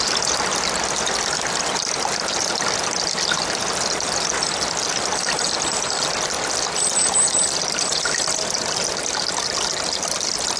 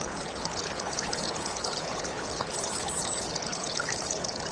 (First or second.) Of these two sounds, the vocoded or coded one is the second